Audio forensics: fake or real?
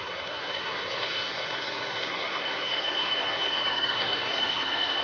fake